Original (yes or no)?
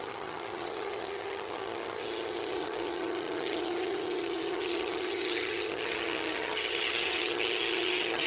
no